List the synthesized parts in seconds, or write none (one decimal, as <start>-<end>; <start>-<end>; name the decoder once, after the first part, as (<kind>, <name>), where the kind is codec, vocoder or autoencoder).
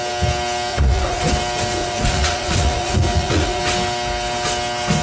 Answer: 0.7-1.2 (vocoder, Vocos); 1.8-3.6